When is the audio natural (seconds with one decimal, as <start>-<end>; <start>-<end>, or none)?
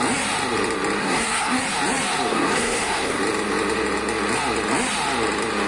0.0-1.0; 1.6-2.3; 3.2-5.7